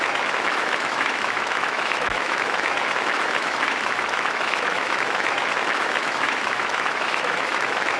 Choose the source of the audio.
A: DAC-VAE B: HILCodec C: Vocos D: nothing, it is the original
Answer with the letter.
A